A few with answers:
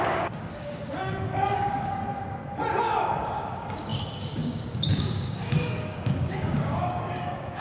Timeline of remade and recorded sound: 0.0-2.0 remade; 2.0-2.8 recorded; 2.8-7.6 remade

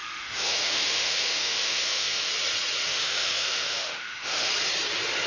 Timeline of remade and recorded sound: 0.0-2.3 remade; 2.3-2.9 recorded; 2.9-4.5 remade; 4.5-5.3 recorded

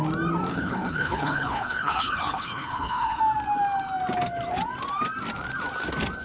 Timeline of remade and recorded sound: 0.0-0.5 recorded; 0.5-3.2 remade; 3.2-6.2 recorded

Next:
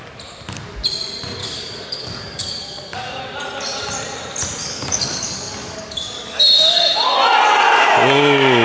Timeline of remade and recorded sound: 0.0-1.4 recorded; 1.4-3.2 remade; 3.2-4.6 recorded; 4.6-7.1 remade; 7.1-8.6 recorded

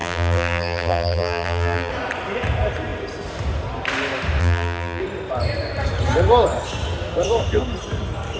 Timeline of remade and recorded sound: 0.0-1.9 remade; 1.9-4.4 recorded; 4.4-5.0 remade; 5.0-8.4 recorded

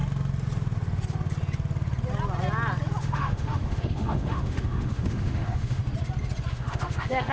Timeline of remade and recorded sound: 0.0-3.0 recorded; 3.0-5.8 remade; 5.8-6.5 recorded; 6.5-7.3 remade

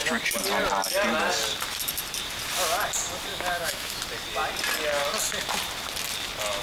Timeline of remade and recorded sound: 0.0-3.3 recorded; 3.3-4.0 remade; 4.0-6.6 recorded